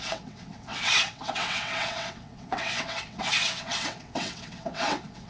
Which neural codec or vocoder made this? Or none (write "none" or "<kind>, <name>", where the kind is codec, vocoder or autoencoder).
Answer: vocoder, WaveNeXt